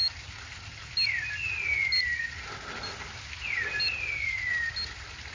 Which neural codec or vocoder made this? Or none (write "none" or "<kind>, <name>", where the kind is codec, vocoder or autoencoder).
none